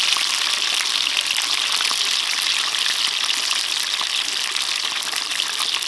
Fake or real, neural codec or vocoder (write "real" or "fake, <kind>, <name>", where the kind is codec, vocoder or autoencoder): real